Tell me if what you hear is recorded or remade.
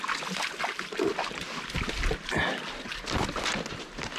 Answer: recorded